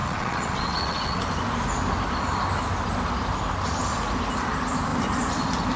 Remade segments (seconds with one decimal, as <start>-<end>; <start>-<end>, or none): 0.0-1.2